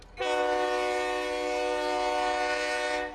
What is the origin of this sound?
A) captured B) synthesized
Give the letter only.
A